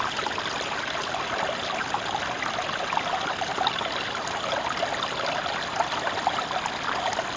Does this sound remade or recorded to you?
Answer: recorded